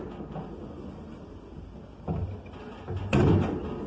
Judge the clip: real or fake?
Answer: fake